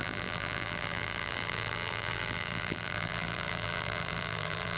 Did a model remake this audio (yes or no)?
yes